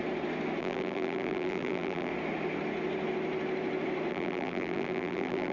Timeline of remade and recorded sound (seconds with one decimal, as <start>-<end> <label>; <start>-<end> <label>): 0.0-0.6 recorded; 0.6-2.1 remade; 2.1-4.1 recorded; 4.1-5.5 remade